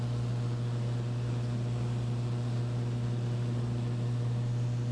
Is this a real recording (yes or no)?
yes